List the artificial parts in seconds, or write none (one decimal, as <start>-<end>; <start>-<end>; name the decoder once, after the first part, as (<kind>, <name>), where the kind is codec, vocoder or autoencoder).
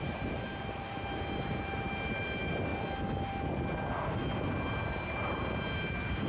0.0-2.7 (vocoder, BigVGAN v2); 4.7-6.3